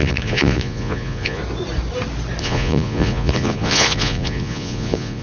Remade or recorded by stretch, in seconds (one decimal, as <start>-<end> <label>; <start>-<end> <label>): 0.0-1.4 remade; 1.4-2.4 recorded; 2.4-5.2 remade